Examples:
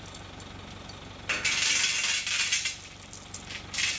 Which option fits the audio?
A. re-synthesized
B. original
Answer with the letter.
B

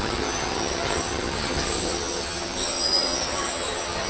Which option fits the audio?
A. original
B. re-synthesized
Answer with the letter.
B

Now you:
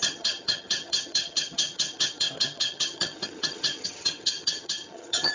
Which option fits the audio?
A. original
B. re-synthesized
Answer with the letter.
B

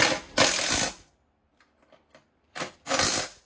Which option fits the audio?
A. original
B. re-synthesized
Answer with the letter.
A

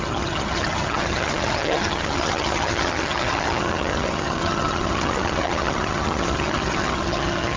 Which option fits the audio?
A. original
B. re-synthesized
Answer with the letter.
B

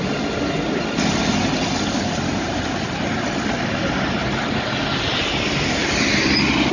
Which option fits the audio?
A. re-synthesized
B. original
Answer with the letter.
B